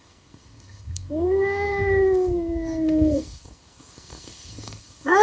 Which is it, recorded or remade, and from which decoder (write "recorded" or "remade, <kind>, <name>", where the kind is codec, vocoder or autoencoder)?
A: remade, codec, SNAC